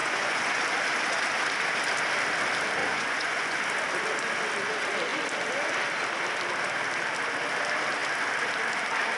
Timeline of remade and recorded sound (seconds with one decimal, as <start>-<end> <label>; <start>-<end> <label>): 0.0-0.6 remade; 0.6-2.8 recorded; 2.8-3.6 remade; 3.6-9.2 recorded